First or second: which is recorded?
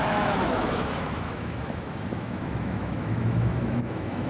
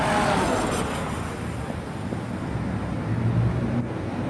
second